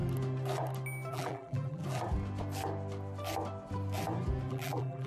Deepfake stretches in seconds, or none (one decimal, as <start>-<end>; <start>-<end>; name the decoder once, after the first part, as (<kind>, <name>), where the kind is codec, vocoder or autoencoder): 1.1-1.8 (vocoder, BigVGAN v2); 4.5-5.1